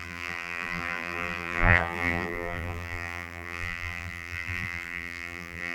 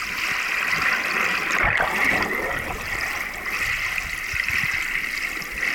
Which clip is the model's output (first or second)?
first